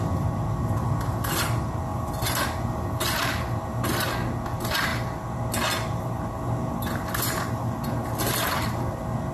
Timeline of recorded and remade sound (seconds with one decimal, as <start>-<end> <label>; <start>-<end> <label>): 0.0-9.3 recorded